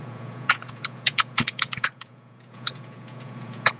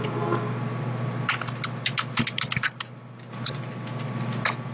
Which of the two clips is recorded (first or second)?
second